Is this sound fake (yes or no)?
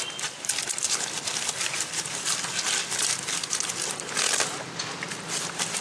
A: no